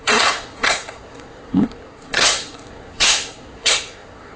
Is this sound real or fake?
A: fake